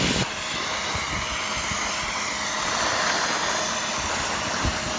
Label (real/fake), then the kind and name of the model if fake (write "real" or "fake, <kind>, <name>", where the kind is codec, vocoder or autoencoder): real